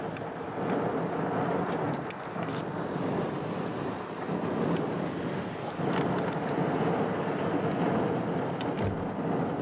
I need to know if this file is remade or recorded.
recorded